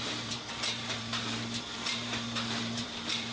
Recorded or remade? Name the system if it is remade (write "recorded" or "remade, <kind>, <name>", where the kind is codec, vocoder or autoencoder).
remade, vocoder, BigVGAN v2